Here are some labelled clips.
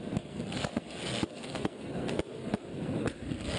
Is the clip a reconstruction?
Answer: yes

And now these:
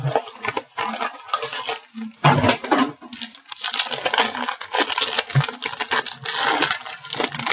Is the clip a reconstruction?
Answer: no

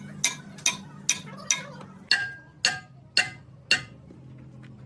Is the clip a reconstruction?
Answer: no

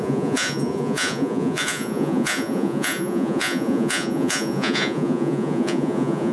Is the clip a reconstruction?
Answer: yes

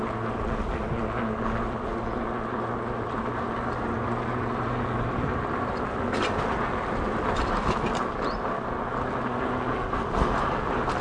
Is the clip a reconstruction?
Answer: no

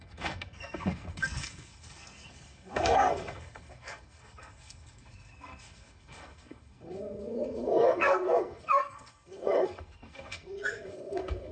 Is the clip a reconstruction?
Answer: yes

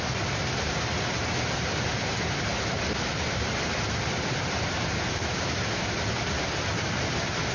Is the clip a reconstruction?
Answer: no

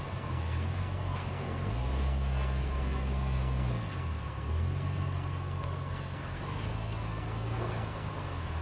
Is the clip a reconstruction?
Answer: yes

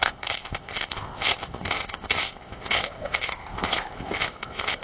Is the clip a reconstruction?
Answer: yes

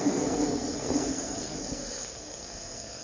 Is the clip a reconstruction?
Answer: yes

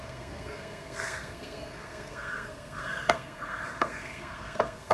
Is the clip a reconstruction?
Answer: yes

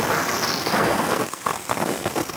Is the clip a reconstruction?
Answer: yes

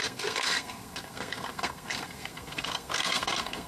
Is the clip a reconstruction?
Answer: yes